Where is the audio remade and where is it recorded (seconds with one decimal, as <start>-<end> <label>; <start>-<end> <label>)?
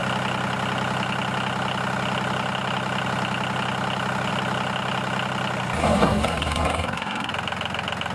0.0-5.8 recorded; 5.8-7.3 remade; 7.3-8.1 recorded